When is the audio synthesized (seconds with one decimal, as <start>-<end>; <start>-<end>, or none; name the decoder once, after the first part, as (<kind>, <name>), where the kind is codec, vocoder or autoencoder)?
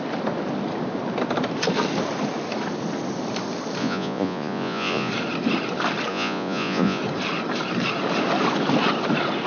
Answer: 3.8-5.1 (vocoder, Vocos); 6.1-7.0